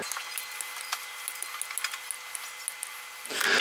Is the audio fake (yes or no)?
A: no